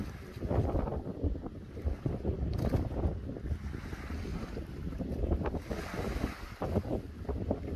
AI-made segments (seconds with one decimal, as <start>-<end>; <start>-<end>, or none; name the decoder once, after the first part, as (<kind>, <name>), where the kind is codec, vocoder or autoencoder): 0.9-2.0 (vocoder, BigVGAN v2); 4.3-5.1